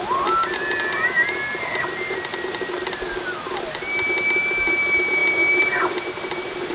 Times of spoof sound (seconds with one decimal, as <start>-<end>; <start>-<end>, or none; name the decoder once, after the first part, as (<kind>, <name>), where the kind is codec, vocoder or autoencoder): none